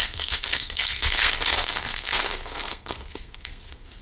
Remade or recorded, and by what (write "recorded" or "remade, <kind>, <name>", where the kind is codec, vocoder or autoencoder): remade, codec, SNAC